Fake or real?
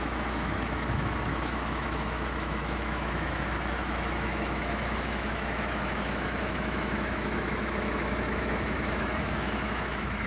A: fake